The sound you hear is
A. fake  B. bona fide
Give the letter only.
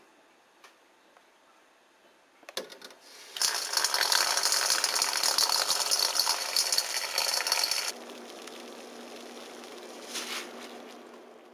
B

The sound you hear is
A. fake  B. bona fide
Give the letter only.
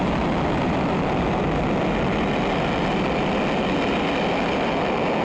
B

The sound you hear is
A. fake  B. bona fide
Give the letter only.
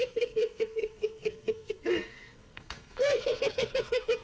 A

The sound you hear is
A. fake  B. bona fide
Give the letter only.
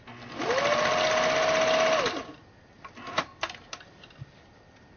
B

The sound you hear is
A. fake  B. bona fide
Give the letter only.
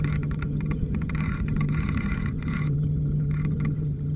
A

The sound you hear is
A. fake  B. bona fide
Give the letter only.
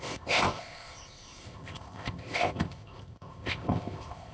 A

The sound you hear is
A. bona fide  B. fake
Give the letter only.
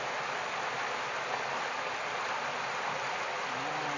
A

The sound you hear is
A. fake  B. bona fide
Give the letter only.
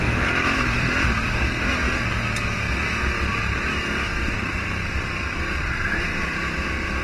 B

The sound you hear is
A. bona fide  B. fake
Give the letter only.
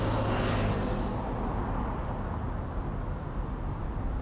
A